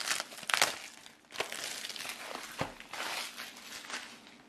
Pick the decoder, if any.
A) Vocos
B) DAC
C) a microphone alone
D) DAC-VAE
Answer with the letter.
C